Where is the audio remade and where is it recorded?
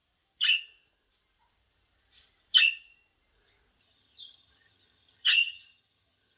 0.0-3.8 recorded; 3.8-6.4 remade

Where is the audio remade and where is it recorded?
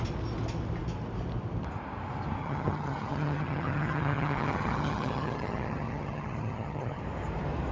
0.0-2.4 recorded; 2.4-7.0 remade; 7.0-7.7 recorded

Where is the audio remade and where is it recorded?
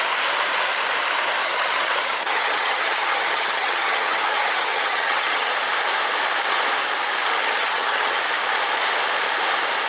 0.0-1.4 recorded; 1.4-5.5 remade; 5.5-7.4 recorded; 7.4-8.2 remade; 8.2-9.9 recorded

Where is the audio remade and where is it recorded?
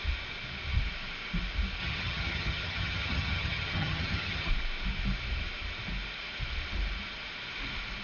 0.0-1.8 recorded; 1.8-4.5 remade; 4.5-8.0 recorded